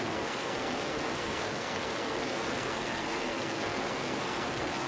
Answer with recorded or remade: remade